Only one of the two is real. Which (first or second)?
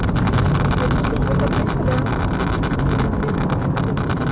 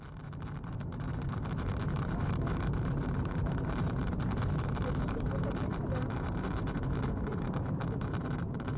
first